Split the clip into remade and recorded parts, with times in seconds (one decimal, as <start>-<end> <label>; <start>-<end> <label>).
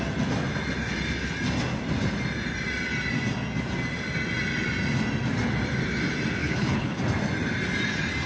0.0-6.4 recorded; 6.4-7.0 remade; 7.0-8.3 recorded